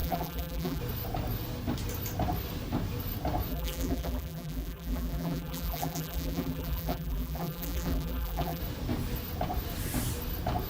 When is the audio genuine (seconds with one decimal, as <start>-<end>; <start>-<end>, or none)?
0.8-3.5; 8.6-10.7